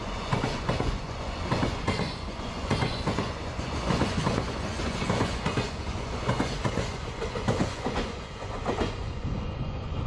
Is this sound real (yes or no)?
no